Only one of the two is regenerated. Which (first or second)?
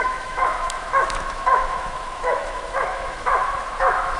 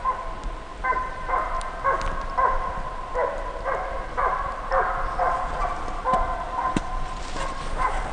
first